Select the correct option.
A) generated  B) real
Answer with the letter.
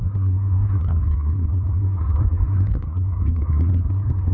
A